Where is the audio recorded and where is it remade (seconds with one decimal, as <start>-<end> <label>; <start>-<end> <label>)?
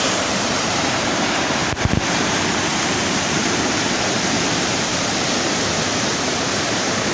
0.0-1.6 remade; 1.6-2.1 recorded; 2.1-4.9 remade; 4.9-6.2 recorded; 6.2-7.1 remade